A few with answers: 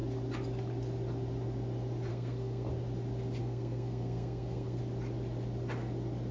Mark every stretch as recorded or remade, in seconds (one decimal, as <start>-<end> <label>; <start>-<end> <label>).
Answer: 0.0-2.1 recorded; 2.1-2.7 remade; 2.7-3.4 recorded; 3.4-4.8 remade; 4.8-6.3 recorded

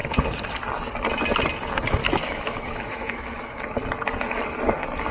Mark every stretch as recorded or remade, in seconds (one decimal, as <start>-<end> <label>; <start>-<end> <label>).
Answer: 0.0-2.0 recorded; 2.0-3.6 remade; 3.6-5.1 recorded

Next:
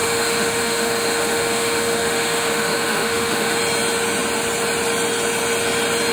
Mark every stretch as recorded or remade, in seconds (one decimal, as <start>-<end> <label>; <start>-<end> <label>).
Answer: 0.0-3.6 remade; 3.6-6.1 recorded

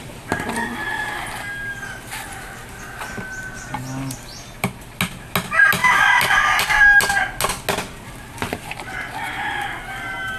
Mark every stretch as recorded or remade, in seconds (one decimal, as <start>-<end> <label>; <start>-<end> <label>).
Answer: 0.0-10.4 recorded

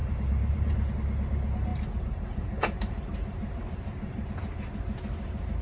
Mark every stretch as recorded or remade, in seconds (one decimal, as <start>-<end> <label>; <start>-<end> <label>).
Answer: 0.0-0.9 remade; 0.9-1.7 recorded; 1.7-4.3 remade; 4.3-5.6 recorded

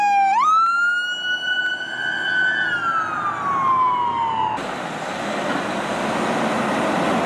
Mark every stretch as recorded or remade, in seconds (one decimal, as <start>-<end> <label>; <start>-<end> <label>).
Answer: 0.0-7.3 recorded

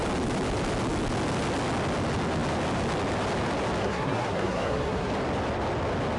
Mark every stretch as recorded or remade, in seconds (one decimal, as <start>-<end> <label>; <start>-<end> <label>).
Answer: 0.0-3.8 recorded; 3.8-5.1 remade; 5.1-6.2 recorded